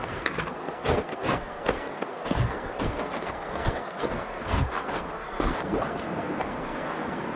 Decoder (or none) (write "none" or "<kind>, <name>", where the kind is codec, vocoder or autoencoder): codec, SNAC